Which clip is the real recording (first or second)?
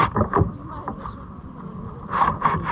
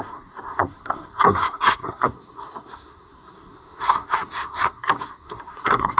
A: first